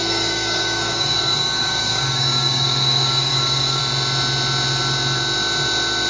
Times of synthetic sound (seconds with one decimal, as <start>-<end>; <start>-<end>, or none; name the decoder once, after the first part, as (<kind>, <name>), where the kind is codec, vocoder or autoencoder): 0.0-3.8 (codec, DAC)